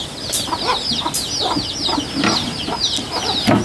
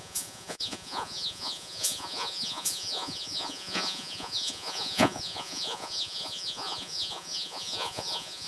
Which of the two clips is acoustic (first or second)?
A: first